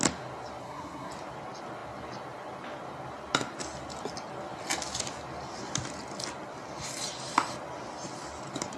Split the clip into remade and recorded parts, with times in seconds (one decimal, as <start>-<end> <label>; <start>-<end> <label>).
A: 0.0-0.6 recorded; 0.6-1.1 remade; 1.1-8.8 recorded